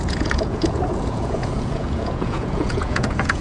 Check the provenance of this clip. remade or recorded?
remade